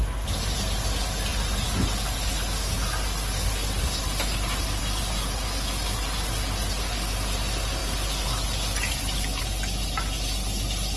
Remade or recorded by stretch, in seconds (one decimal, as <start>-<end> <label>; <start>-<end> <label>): 0.0-11.0 recorded